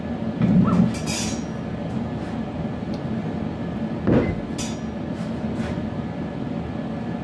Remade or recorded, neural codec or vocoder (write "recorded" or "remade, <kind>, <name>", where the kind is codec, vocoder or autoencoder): recorded